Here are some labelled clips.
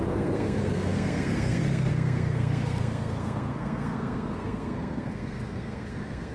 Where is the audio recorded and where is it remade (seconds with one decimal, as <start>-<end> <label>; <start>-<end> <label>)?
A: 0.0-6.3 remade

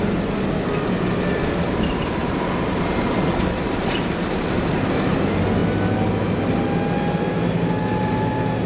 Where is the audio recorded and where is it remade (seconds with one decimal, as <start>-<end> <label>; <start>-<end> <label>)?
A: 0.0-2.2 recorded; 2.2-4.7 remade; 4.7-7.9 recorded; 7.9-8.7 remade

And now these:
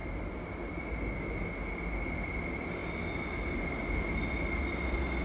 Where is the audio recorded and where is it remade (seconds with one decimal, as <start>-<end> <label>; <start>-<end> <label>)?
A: 0.0-5.2 recorded

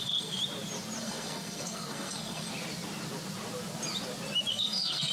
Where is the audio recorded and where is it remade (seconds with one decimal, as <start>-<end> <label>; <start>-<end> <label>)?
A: 0.0-0.4 remade; 0.4-1.0 recorded; 1.0-2.5 remade; 2.5-4.5 recorded; 4.5-5.1 remade

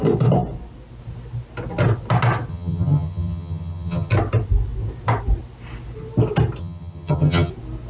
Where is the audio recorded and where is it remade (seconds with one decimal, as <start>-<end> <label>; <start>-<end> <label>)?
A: 0.0-2.5 recorded; 2.5-4.1 remade; 4.1-6.6 recorded; 6.6-7.5 remade; 7.5-7.9 recorded